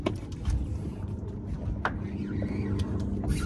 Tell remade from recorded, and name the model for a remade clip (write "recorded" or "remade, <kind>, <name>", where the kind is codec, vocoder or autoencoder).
recorded